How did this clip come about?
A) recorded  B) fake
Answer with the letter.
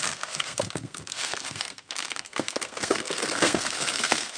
B